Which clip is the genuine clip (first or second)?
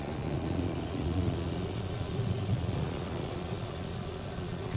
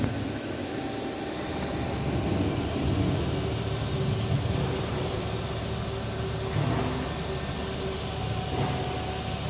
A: second